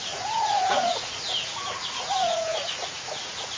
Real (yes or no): no